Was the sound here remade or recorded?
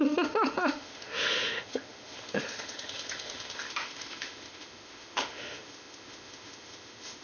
remade